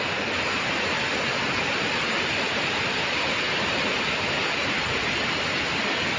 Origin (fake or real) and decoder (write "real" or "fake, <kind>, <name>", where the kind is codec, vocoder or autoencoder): real